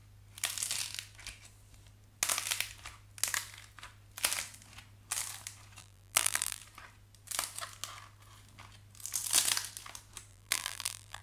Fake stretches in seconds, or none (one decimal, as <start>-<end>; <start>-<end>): 5.8-6.6; 10.3-11.2